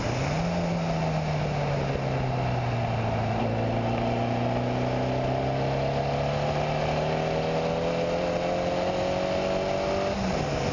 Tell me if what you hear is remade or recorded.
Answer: recorded